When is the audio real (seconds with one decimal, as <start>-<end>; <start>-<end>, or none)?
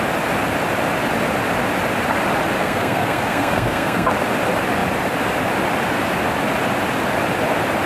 0.0-2.6; 4.1-7.9